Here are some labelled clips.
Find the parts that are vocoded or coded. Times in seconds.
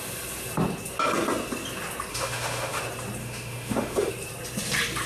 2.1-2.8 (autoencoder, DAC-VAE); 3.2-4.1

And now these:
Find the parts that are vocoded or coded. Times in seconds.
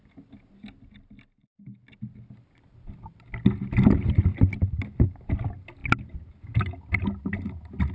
none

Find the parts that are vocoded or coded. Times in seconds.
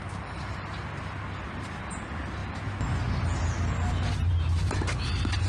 none